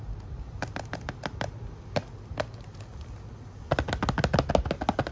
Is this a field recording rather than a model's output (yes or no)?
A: yes